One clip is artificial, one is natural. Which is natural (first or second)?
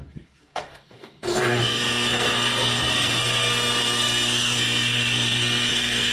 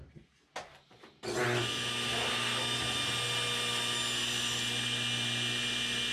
second